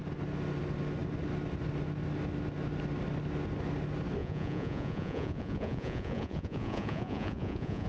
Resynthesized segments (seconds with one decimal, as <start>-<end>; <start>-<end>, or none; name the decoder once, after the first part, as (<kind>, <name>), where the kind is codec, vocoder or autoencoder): 4.2-7.9 (vocoder, Vocos)